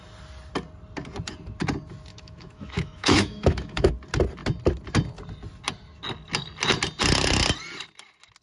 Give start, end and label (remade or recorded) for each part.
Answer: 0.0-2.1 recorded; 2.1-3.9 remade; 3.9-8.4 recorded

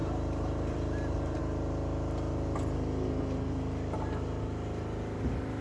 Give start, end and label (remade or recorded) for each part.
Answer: 0.0-1.4 remade; 1.4-5.6 recorded

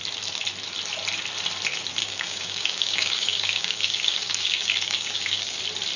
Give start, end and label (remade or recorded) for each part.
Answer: 0.0-2.0 recorded; 2.0-5.6 remade; 5.6-6.0 recorded